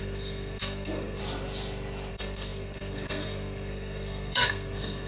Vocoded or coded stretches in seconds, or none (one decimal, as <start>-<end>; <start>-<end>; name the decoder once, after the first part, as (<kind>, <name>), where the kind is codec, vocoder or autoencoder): 0.0-1.2 (codec, SNAC); 2.1-5.1